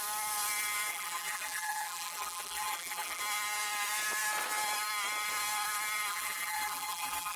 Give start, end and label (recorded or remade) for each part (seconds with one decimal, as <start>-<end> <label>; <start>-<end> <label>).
0.0-0.9 recorded; 0.9-3.2 remade; 3.2-6.1 recorded; 6.1-7.4 remade